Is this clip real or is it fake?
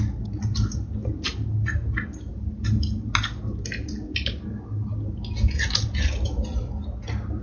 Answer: real